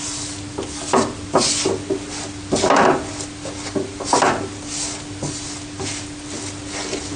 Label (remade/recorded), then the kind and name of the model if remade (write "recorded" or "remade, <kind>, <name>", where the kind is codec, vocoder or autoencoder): recorded